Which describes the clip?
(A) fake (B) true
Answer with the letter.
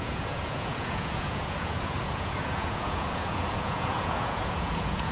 A